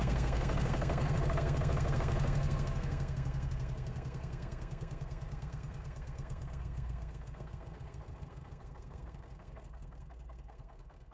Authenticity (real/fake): fake